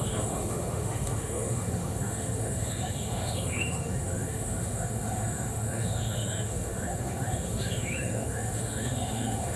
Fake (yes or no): yes